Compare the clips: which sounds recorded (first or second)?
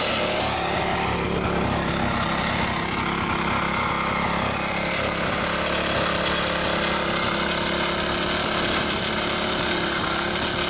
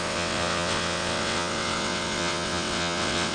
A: first